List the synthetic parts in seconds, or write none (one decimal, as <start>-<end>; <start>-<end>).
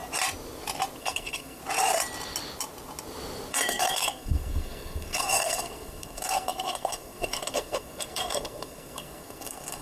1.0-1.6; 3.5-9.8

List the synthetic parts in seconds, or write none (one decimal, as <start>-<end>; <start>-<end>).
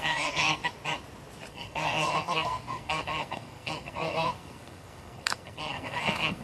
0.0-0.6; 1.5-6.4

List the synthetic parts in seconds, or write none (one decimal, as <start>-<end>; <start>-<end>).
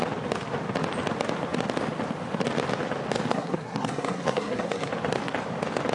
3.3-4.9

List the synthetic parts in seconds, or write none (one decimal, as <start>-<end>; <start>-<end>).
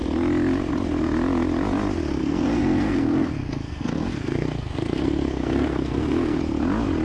2.2-6.4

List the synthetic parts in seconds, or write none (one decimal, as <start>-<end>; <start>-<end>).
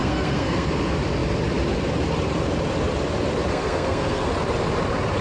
0.0-0.7; 3.5-4.3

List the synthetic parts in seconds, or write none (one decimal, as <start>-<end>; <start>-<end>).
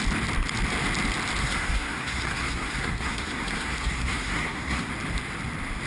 1.4-4.9